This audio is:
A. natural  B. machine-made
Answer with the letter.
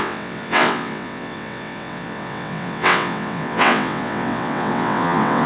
B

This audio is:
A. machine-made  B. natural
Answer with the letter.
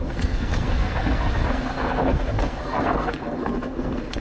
A